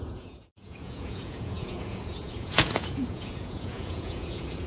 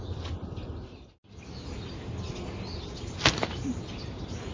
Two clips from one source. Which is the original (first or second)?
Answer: second